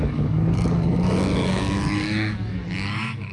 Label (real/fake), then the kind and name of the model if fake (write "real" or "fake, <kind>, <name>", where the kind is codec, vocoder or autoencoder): fake, codec, DAC